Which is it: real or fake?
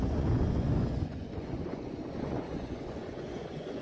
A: fake